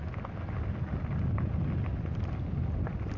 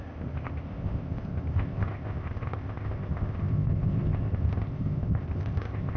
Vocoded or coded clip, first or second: second